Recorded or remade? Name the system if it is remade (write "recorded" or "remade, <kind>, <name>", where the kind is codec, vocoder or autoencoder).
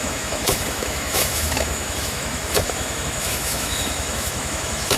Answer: remade, autoencoder, DAC-VAE